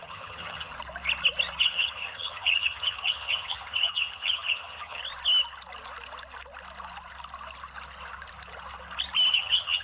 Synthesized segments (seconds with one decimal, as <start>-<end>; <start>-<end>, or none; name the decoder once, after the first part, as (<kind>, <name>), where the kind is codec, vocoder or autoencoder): 0.0-0.7 (vocoder, HiFi-GAN); 1.6-5.0; 9.3-9.8